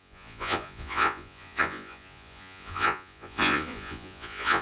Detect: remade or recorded remade